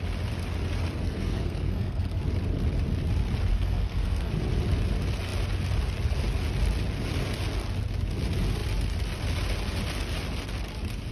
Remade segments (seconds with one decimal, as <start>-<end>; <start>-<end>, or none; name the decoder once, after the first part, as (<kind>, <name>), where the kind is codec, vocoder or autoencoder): 1.0-2.2 (codec, SNAC); 3.5-4.3